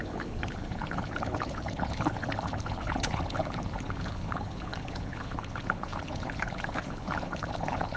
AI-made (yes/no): yes